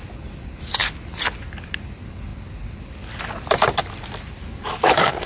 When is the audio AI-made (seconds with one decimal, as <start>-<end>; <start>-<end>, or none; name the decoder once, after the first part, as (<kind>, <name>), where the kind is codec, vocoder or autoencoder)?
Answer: 4.4-5.3 (codec, DAC)